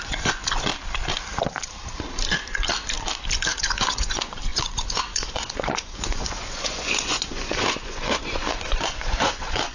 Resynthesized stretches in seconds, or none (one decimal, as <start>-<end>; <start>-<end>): 0.0-0.7; 3.6-9.7